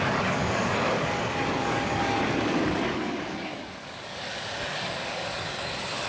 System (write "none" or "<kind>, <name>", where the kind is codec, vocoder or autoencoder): codec, DAC